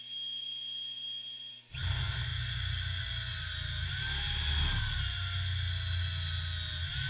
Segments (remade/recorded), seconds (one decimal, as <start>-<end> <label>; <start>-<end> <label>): 0.0-7.1 recorded